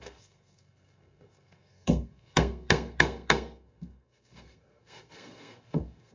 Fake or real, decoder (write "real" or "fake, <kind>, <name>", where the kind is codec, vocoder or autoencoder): fake, codec, SNAC